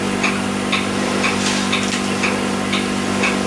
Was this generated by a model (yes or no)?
no